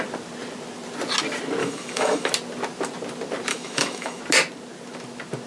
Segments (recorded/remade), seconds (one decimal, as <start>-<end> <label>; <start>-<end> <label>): 0.0-1.6 recorded; 1.6-2.3 remade; 2.3-3.5 recorded; 3.5-4.2 remade; 4.2-5.5 recorded